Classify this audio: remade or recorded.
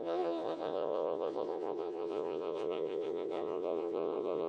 remade